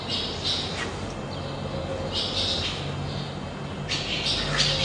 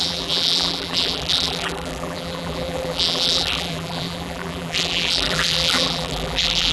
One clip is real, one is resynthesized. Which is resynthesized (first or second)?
second